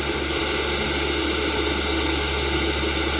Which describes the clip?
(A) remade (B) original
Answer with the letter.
B